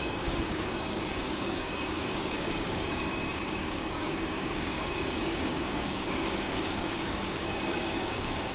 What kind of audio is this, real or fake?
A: fake